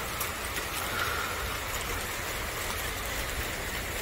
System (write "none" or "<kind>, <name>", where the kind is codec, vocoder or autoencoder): none